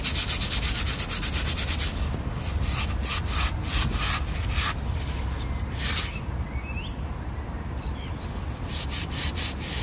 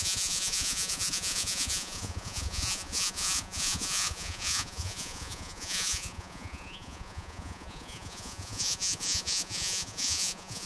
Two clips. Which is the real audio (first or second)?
first